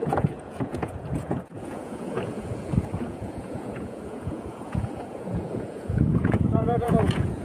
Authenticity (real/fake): fake